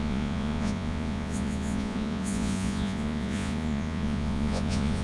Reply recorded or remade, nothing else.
remade